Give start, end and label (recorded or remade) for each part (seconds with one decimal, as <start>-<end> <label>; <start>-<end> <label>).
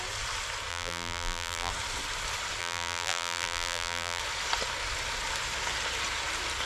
0.0-0.7 recorded; 0.7-1.7 remade; 1.7-2.6 recorded; 2.6-4.2 remade; 4.2-6.7 recorded